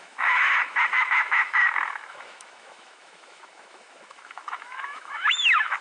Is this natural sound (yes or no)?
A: no